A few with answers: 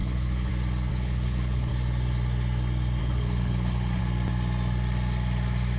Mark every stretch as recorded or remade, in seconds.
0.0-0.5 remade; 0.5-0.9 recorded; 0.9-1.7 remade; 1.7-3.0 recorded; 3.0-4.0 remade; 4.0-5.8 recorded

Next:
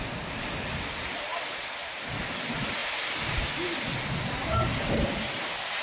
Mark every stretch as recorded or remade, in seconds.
0.0-5.8 recorded

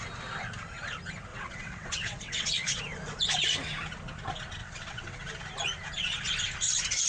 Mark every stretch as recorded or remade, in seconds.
0.0-1.3 recorded; 1.3-2.8 remade; 2.8-4.6 recorded; 4.6-5.3 remade; 5.3-7.1 recorded

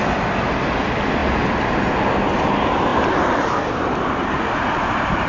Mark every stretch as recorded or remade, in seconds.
0.0-5.3 recorded

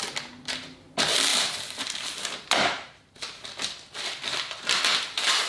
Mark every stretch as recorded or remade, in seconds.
0.0-1.3 recorded; 1.3-3.1 remade; 3.1-5.5 recorded